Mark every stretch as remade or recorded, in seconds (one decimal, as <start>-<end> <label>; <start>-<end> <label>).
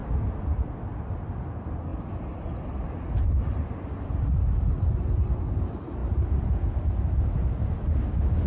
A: 0.0-8.5 recorded